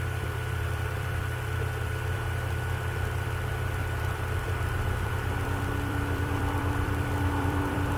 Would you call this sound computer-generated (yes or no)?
yes